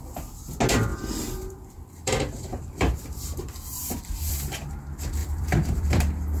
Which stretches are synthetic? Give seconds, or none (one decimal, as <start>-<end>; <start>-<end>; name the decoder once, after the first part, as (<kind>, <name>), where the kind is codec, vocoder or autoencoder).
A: 0.9-4.7 (vocoder, BigVGAN v2); 5.2-6.4